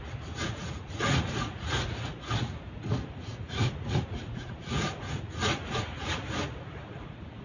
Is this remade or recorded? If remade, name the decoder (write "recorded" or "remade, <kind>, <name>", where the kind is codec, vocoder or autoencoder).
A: remade, vocoder, Vocos